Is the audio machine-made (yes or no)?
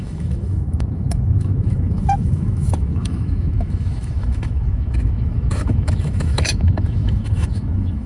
yes